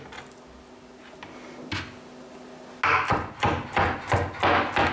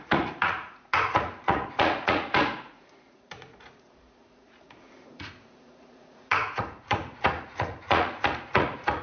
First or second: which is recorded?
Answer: first